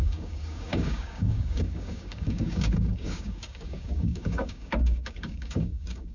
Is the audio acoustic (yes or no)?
no